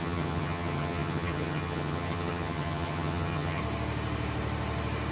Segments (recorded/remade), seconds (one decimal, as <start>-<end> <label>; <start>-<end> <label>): 0.0-3.6 remade; 3.6-5.1 recorded